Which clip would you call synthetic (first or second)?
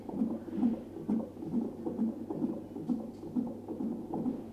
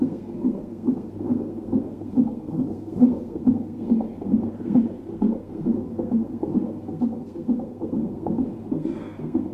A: second